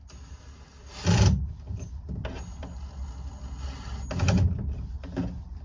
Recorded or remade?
recorded